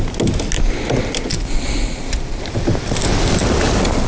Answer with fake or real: real